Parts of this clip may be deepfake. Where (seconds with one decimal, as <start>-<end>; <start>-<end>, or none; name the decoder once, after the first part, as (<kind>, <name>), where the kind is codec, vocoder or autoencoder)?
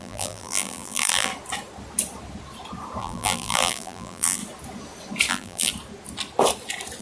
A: 0.0-1.3 (vocoder, BigVGAN v2); 3.0-4.4; 5.3-5.7